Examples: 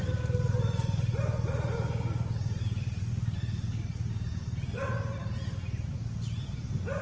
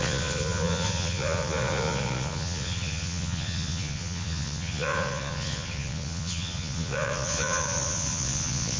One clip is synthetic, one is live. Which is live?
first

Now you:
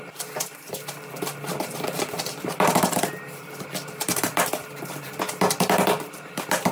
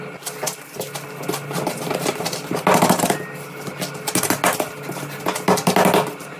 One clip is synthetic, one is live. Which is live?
second